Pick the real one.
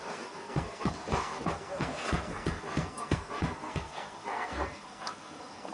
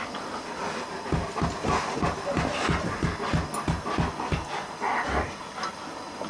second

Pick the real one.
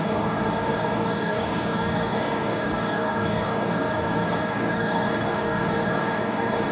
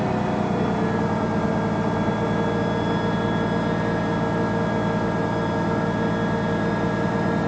second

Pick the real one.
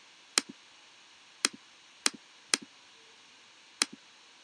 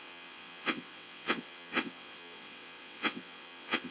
first